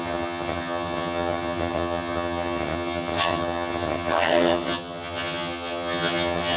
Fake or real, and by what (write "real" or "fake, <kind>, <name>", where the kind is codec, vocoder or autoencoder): fake, vocoder, HiFi-GAN